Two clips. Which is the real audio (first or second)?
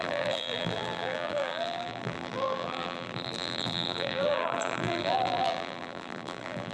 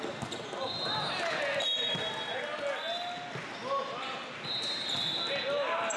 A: second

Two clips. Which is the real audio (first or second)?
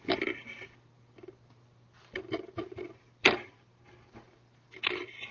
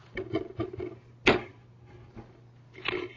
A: second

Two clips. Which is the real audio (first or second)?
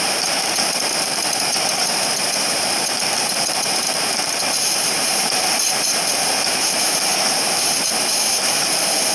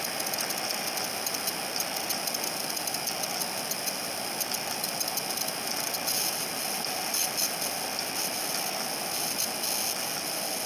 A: second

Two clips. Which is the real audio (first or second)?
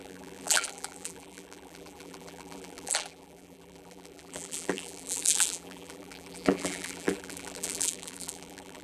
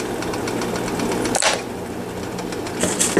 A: second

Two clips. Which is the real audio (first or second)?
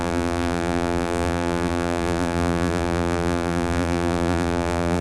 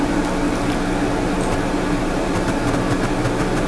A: second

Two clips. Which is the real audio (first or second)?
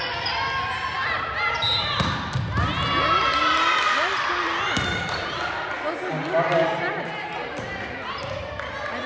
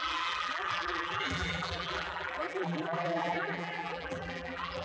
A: first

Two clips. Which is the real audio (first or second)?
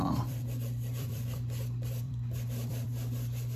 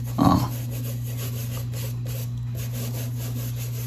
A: second